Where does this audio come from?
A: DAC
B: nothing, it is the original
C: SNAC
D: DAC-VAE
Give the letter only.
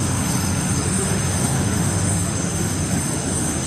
D